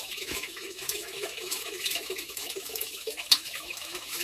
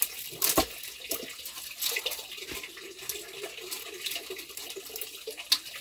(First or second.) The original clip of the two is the second